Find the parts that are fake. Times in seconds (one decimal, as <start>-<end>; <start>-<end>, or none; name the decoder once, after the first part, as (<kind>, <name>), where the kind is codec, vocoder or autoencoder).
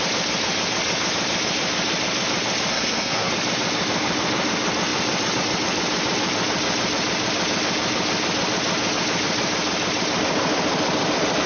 2.7-3.3 (codec, SNAC)